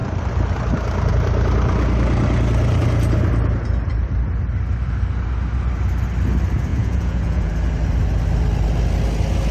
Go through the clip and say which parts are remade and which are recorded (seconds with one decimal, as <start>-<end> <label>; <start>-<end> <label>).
0.0-6.7 recorded; 6.7-7.5 remade; 7.5-9.5 recorded